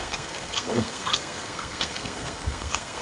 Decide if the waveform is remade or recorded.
remade